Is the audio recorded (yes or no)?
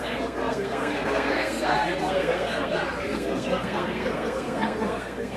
no